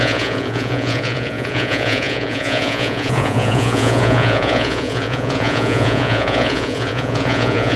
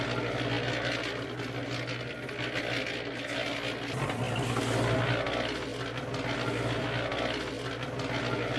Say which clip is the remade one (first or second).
first